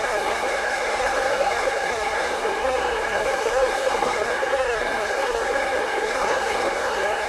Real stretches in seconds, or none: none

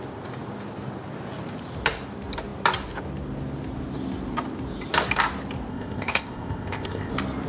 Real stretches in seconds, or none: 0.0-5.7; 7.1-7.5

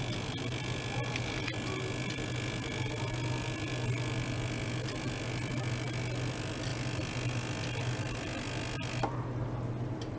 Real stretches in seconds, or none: 0.0-10.2

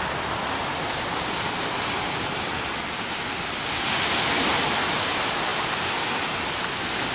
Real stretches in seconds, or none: 0.0-5.5; 6.1-7.1

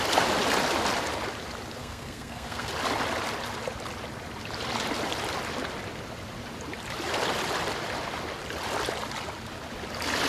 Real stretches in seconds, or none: 0.0-1.8; 2.7-10.3

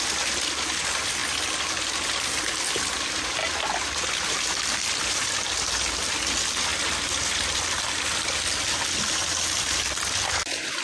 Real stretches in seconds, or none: 0.0-10.8